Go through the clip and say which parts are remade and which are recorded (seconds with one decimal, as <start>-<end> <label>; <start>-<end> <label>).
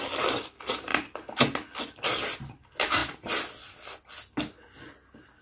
0.0-5.4 recorded